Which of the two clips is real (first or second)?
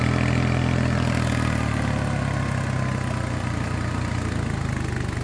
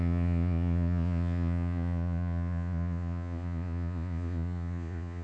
first